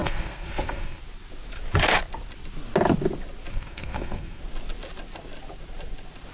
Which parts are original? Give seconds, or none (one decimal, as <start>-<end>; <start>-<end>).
1.0-3.5; 4.4-6.3